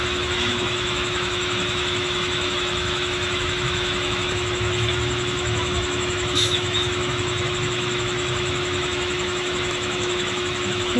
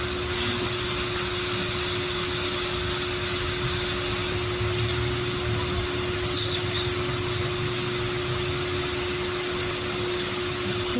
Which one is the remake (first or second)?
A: first